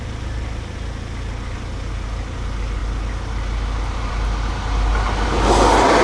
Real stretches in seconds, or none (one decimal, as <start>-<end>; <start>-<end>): 0.0-6.0